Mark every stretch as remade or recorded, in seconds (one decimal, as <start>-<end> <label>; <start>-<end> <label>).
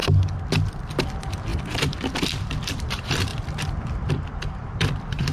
0.0-0.9 recorded; 0.9-3.3 remade; 3.3-4.1 recorded; 4.1-5.3 remade